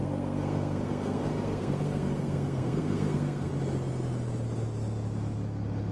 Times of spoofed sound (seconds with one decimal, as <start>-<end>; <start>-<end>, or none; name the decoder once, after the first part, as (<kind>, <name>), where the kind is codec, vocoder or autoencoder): 0.0-3.5 (codec, SNAC)